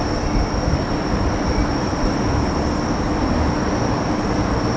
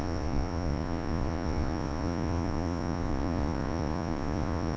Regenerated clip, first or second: second